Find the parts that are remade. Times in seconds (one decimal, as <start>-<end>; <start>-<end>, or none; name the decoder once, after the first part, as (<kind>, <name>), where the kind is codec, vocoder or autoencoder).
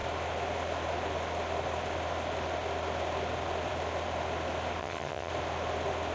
4.8-5.3 (vocoder, HiFi-GAN)